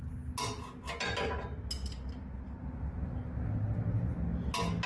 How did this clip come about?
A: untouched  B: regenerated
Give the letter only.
A